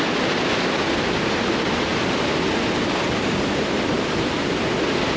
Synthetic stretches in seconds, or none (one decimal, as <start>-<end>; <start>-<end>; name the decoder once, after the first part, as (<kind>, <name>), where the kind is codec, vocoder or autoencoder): none